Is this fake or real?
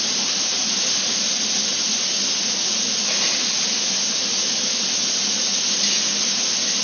real